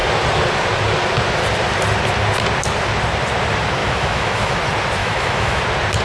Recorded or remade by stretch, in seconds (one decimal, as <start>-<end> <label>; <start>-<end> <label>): 0.0-3.8 recorded; 3.8-4.6 remade; 4.6-5.0 recorded; 5.0-5.6 remade; 5.6-6.0 recorded